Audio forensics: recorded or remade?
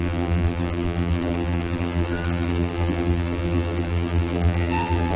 remade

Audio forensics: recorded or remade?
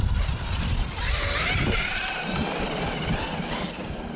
recorded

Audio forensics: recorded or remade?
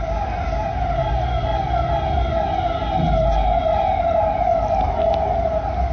recorded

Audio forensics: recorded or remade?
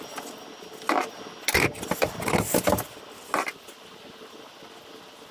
recorded